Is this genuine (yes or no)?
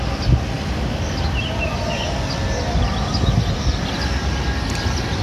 yes